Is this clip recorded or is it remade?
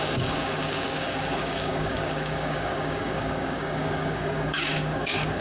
remade